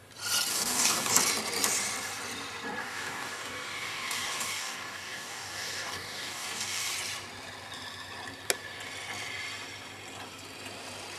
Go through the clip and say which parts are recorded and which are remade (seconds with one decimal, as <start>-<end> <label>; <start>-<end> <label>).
0.0-0.5 recorded; 0.5-1.1 remade; 1.1-2.8 recorded; 2.8-6.9 remade; 6.9-11.2 recorded